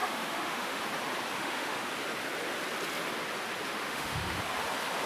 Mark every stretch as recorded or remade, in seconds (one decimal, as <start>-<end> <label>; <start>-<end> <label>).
0.0-0.8 remade; 0.8-1.4 recorded; 1.4-1.9 remade; 1.9-3.7 recorded; 3.7-4.4 remade; 4.4-5.1 recorded